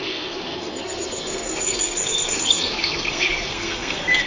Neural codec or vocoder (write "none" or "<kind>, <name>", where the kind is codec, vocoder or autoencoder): codec, SNAC